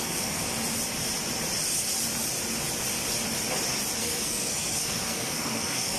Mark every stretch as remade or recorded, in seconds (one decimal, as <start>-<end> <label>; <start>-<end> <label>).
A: 0.0-0.4 remade; 0.4-4.0 recorded; 4.0-6.0 remade